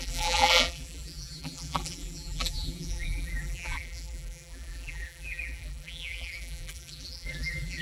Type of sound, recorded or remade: remade